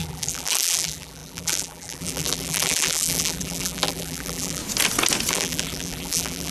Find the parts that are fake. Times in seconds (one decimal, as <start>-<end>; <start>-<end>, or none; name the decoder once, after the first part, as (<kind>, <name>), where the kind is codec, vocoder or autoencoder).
0.0-4.6 (vocoder, BigVGAN v2); 5.3-6.5